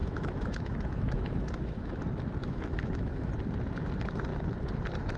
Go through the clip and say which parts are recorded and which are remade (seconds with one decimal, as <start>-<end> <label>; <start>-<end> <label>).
0.0-2.0 remade; 2.0-2.4 recorded; 2.4-3.3 remade; 3.3-5.2 recorded